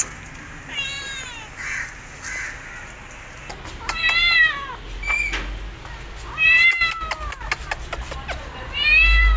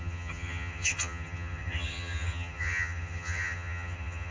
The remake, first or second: second